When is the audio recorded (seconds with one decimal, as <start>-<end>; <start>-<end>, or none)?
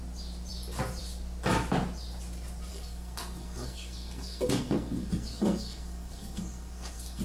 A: 0.0-2.7